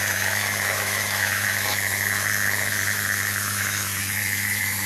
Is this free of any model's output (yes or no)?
no